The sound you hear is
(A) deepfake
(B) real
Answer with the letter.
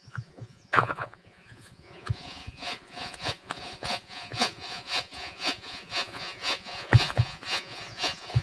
A